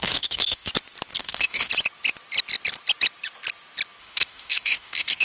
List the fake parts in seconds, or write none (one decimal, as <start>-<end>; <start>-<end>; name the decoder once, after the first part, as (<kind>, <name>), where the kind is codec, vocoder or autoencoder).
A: 0.0-0.7 (autoencoder, DAC-VAE); 1.2-1.7; 4.0-5.2